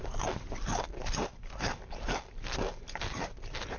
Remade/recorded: recorded